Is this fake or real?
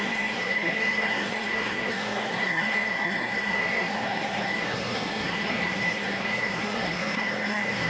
fake